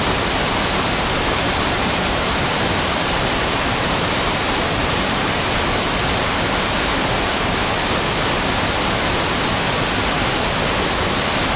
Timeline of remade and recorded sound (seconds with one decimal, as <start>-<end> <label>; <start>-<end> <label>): 0.0-1.3 recorded; 1.3-5.3 remade; 5.3-11.6 recorded